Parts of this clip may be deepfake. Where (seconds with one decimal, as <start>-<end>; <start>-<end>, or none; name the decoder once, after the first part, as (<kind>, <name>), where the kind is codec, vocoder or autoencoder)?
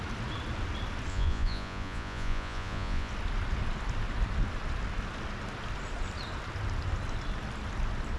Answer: 1.1-3.1 (vocoder, Vocos)